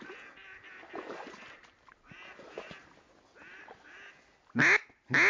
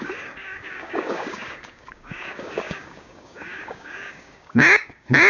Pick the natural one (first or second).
first